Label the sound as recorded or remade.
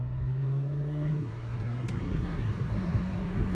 remade